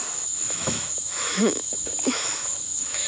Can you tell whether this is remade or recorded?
remade